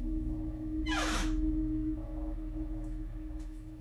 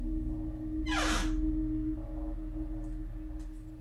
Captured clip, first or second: second